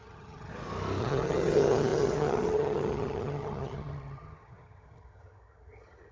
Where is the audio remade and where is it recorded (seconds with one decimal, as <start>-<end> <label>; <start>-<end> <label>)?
0.0-0.5 remade; 0.5-1.0 recorded; 1.0-6.1 remade